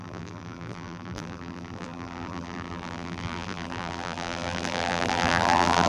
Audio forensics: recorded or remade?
remade